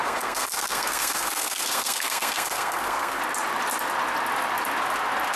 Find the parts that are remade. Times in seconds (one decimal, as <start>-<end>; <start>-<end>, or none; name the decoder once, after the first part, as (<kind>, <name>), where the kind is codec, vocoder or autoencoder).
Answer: 0.0-3.2 (codec, SNAC)

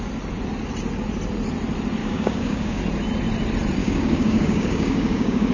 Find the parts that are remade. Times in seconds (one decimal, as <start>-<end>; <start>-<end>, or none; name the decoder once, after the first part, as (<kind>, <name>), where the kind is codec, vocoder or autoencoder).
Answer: 2.0-2.8 (codec, DAC); 3.8-5.5

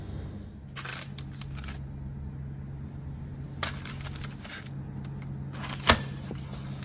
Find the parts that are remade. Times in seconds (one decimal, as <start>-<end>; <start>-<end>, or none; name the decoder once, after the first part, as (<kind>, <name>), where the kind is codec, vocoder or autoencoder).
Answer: none

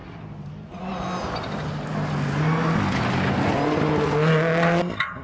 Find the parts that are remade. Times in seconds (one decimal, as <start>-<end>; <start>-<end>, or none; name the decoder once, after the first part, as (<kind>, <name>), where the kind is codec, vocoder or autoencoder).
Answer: none